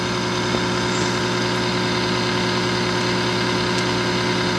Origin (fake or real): real